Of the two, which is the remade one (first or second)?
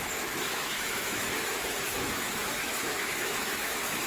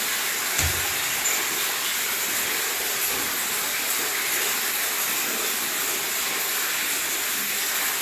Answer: first